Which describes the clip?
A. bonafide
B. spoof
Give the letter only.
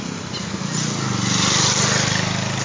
A